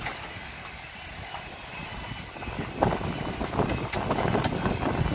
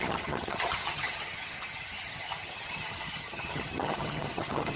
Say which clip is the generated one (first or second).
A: second